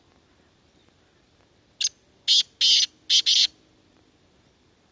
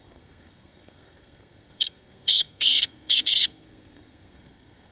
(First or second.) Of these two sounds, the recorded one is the first